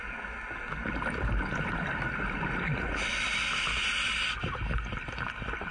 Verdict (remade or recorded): recorded